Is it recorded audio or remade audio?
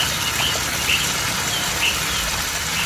recorded